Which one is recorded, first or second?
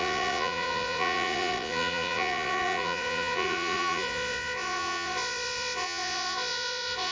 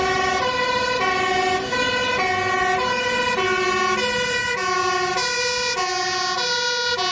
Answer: second